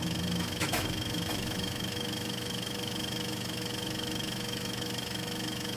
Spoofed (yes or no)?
yes